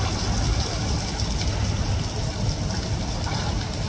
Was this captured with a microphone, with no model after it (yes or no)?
yes